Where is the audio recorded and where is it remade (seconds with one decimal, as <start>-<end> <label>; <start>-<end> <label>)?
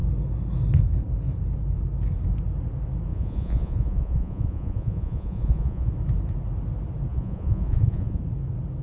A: 0.0-3.1 recorded; 3.1-5.9 remade; 5.9-7.1 recorded; 7.1-8.2 remade; 8.2-8.8 recorded